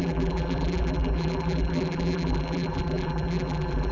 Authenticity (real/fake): fake